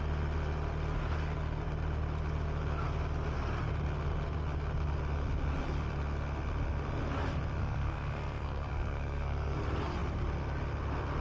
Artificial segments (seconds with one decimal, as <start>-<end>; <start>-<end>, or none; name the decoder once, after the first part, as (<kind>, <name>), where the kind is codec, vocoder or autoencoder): 7.6-9.6 (codec, SNAC)